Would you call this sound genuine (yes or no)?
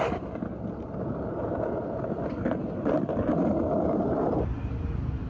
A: yes